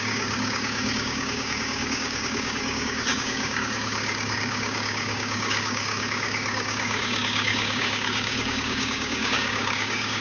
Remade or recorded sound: remade